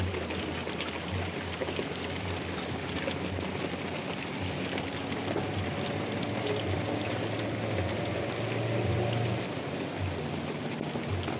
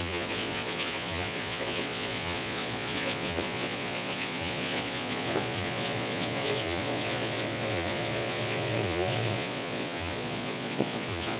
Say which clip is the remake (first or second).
second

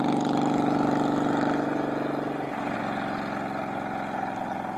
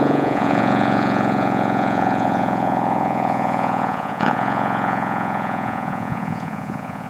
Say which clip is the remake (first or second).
second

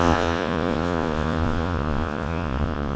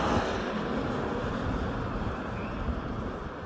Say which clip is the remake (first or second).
first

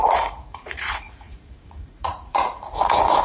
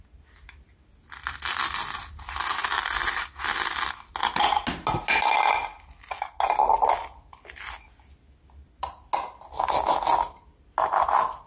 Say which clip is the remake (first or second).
first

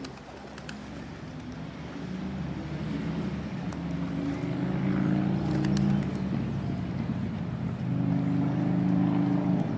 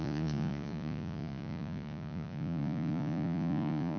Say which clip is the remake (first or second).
second